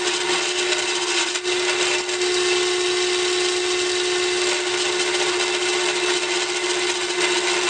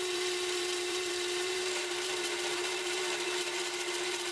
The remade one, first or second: second